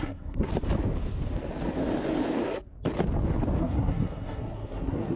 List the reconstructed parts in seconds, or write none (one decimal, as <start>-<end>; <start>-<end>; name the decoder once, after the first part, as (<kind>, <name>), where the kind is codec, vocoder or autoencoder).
0.0-0.5 (codec, SNAC); 3.6-5.2